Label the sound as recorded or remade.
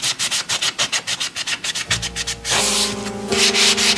recorded